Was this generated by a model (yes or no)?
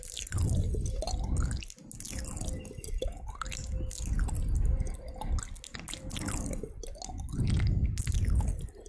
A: no